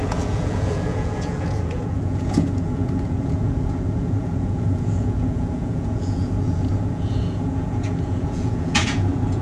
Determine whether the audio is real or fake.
fake